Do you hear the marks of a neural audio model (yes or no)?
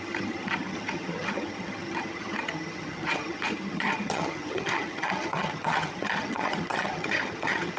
yes